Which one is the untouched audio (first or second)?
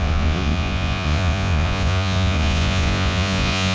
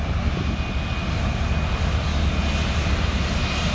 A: second